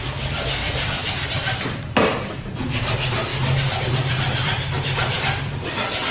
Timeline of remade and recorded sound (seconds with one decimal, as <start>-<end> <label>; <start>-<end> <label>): 0.0-1.0 remade; 1.0-1.6 recorded; 1.6-3.3 remade; 3.3-3.8 recorded; 3.8-6.1 remade